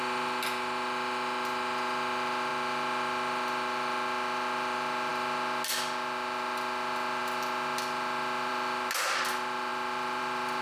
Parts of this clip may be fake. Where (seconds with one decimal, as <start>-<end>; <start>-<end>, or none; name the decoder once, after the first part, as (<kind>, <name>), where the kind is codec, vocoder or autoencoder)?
none